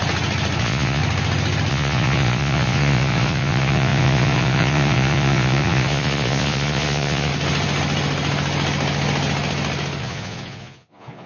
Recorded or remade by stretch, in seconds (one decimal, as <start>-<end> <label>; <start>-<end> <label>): 0.0-0.6 recorded; 0.6-1.0 remade; 1.0-1.7 recorded; 1.7-7.3 remade; 7.3-10.0 recorded; 10.0-11.3 remade